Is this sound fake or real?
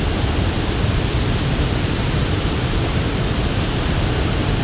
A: real